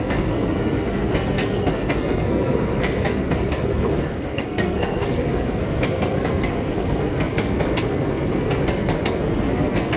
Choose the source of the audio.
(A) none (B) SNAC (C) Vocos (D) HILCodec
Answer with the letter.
B